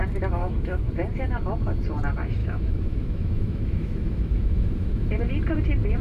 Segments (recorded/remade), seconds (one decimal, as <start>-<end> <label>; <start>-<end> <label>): 0.0-0.4 recorded; 0.4-0.9 remade; 0.9-2.4 recorded; 2.4-5.1 remade; 5.1-6.0 recorded